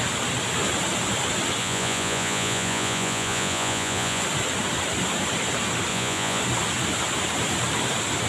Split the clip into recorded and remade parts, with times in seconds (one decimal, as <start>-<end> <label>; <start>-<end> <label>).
0.0-1.6 recorded; 1.6-4.2 remade; 4.2-5.9 recorded; 5.9-6.4 remade; 6.4-8.3 recorded